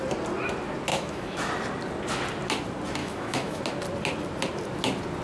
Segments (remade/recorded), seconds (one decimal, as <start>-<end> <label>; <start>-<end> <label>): 0.0-0.9 recorded; 0.9-1.5 remade; 1.5-3.0 recorded; 3.0-3.6 remade; 3.6-5.2 recorded